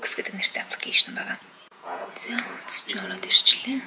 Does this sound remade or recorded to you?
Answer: remade